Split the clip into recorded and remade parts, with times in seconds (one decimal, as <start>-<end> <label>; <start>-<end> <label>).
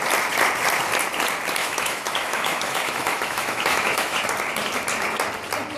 0.0-1.6 recorded; 1.6-4.3 remade; 4.3-5.8 recorded